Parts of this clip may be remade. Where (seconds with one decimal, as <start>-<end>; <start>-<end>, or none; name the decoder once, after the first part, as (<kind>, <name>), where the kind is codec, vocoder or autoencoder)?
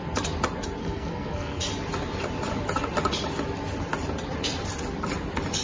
0.8-1.6 (codec, SNAC)